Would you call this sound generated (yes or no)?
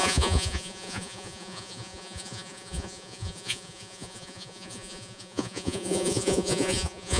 yes